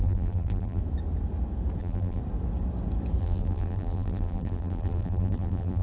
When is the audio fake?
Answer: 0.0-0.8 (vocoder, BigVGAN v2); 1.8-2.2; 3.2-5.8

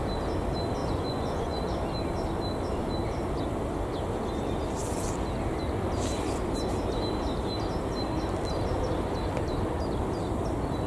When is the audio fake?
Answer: 0.8-1.6 (vocoder, Vocos)

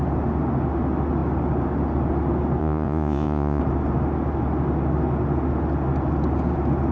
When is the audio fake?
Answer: 2.6-3.6 (vocoder, Vocos)

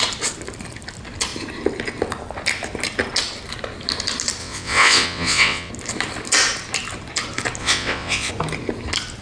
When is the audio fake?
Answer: 4.4-5.7 (vocoder, WaveNeXt); 7.6-8.3

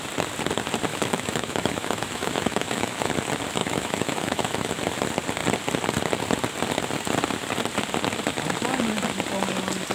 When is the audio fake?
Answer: 0.9-3.1 (autoencoder, DAC-VAE); 3.6-4.7

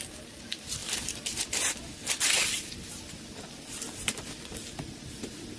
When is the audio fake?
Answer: none

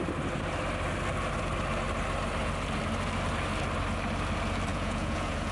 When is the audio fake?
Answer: 4.7-5.5 (vocoder, Vocos)

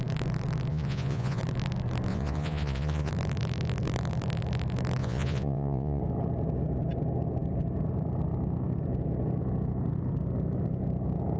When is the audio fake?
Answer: 0.7-1.4 (vocoder, Vocos); 2.1-3.1; 5.0-6.0